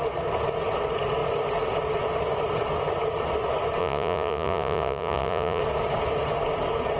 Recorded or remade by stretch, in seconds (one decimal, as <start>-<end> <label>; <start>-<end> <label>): 0.0-3.8 recorded; 3.8-5.6 remade; 5.6-7.0 recorded